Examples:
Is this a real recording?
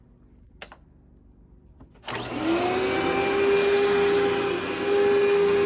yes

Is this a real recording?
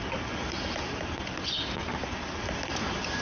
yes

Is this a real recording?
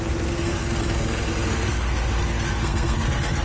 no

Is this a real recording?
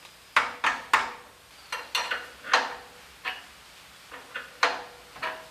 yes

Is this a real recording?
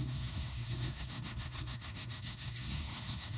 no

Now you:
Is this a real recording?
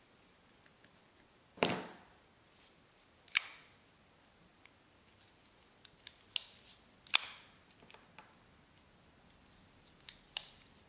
yes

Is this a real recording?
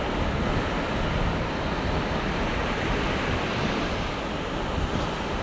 yes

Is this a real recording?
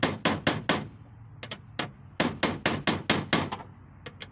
yes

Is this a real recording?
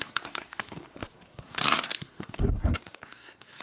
no